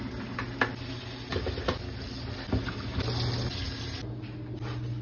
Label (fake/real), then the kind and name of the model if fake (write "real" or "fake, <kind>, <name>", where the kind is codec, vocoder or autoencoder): real